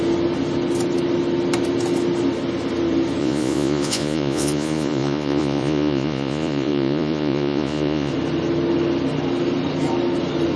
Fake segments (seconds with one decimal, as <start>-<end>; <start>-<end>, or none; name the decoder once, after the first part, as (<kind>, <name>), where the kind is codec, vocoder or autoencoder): 3.2-8.1 (vocoder, Vocos)